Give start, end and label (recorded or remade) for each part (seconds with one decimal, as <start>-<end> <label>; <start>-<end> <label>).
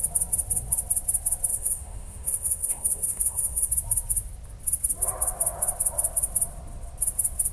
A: 0.0-1.5 recorded; 1.5-3.7 remade; 3.7-7.5 recorded